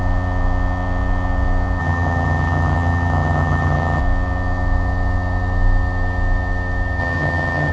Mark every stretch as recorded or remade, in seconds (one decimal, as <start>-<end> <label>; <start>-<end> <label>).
0.0-1.8 recorded; 1.8-4.0 remade; 4.0-7.0 recorded; 7.0-7.7 remade